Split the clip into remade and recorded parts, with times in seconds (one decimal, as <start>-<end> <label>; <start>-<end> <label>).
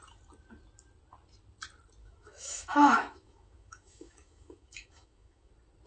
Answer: 0.0-2.0 recorded; 2.0-5.5 remade; 5.5-5.9 recorded